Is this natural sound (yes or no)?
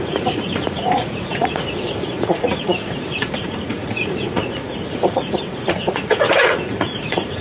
no